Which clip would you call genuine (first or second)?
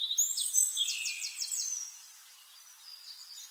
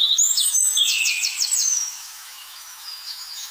first